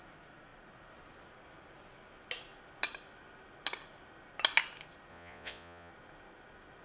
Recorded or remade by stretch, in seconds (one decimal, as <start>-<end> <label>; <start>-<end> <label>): 0.0-5.1 recorded; 5.1-5.9 remade; 5.9-6.8 recorded